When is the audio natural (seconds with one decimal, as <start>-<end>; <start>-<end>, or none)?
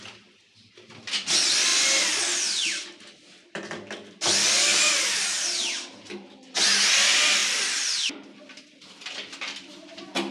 1.7-2.2